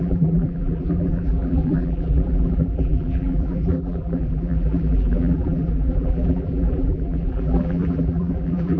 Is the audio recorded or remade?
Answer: remade